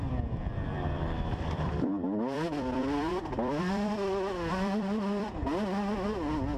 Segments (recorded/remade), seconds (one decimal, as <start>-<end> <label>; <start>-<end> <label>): 0.0-5.4 remade; 5.4-6.6 recorded